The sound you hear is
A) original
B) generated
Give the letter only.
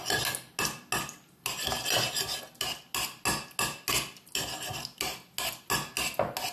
A